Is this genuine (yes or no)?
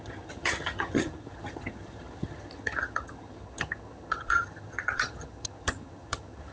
no